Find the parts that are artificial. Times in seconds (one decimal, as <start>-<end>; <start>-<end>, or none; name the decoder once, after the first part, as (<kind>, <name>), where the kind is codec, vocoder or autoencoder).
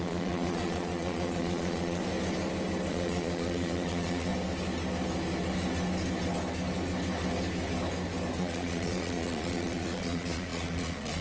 0.0-2.0 (vocoder, Vocos); 2.9-4.3; 8.4-11.2